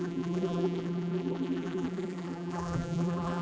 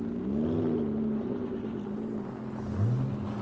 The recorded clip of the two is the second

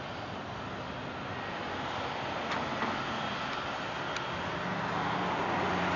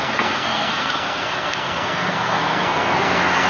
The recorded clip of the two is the first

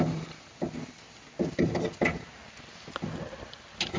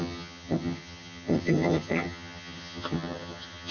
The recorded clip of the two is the first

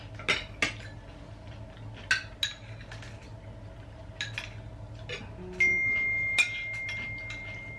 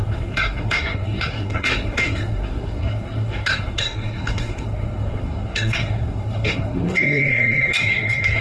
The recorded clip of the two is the first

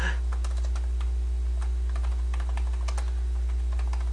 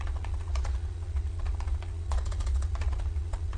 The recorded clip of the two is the first